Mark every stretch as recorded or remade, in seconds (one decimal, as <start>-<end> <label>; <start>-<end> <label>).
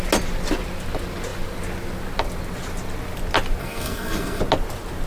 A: 0.0-3.6 recorded; 3.6-4.4 remade; 4.4-5.1 recorded